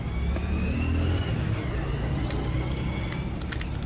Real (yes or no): yes